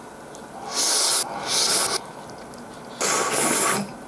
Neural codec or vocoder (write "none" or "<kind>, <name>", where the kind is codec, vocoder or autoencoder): none